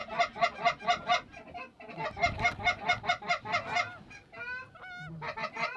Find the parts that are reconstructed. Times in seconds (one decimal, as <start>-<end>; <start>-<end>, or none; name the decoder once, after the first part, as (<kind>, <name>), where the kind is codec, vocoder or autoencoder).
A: none